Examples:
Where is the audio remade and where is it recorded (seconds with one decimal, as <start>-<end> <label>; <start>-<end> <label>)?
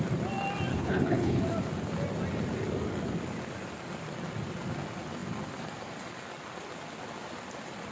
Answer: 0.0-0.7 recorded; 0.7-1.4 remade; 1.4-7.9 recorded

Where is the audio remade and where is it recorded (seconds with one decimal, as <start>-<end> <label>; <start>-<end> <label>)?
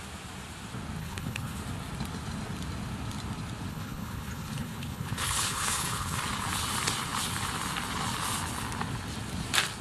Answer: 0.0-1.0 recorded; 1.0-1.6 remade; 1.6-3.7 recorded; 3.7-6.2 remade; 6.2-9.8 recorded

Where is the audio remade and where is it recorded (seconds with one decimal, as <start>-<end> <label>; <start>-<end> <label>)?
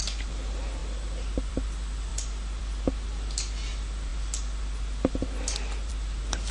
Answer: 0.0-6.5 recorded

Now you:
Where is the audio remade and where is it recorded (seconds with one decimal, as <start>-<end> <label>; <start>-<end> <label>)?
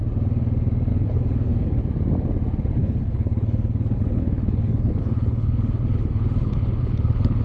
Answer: 0.0-0.9 recorded; 0.9-1.8 remade; 1.8-2.8 recorded; 2.8-7.4 remade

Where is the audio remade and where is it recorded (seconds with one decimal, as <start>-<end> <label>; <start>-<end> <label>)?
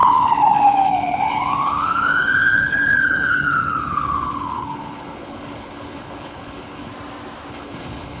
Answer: 0.0-6.9 remade; 6.9-7.5 recorded; 7.5-8.2 remade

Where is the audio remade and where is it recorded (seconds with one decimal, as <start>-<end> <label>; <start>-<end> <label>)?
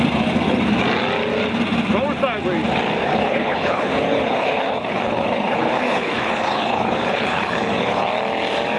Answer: 0.0-3.0 recorded; 3.0-8.1 remade; 8.1-8.8 recorded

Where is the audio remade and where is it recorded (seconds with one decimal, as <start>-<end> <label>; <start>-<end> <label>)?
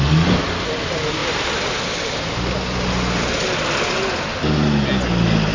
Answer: 0.0-5.5 recorded